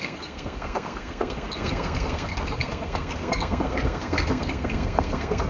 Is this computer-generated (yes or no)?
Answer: yes